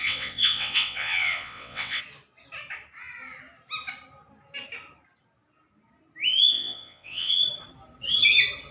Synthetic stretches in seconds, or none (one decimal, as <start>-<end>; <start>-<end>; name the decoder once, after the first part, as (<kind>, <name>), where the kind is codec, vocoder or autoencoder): 0.0-2.0 (vocoder, WaveNeXt); 6.5-7.4